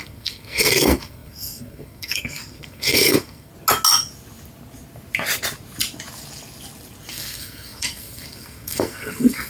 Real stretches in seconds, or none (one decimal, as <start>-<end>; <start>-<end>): 3.5-7.1